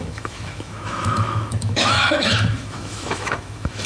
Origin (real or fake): fake